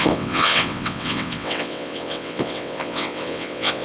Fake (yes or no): yes